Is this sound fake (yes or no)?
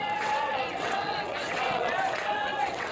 yes